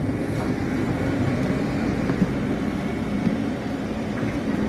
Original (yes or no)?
no